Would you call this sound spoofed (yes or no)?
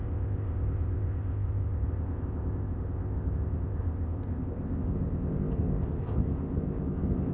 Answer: yes